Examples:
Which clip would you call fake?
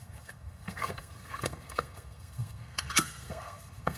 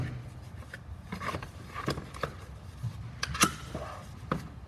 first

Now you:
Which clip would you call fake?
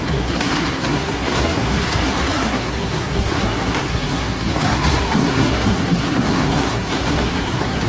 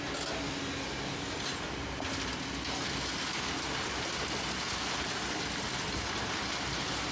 first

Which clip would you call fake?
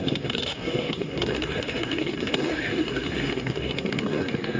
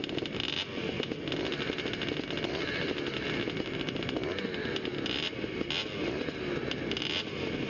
first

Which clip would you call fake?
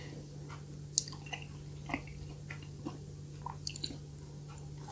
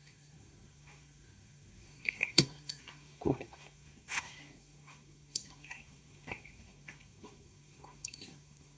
second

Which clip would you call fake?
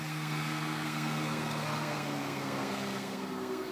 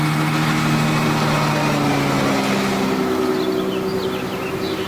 first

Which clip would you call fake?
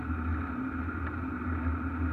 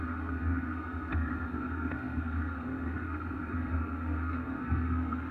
second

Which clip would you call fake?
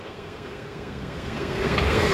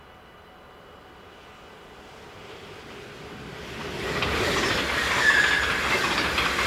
first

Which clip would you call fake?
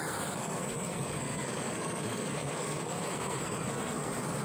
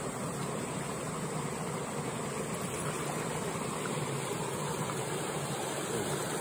first